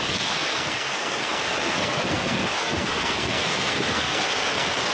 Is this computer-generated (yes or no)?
yes